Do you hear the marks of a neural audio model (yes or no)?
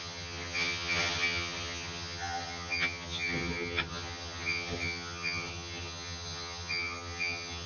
yes